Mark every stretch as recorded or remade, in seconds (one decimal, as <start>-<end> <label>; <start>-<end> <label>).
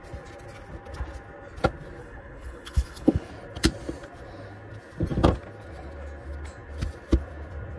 0.0-2.0 recorded; 2.0-3.3 remade; 3.3-7.8 recorded